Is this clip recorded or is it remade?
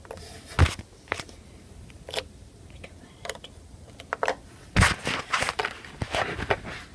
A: recorded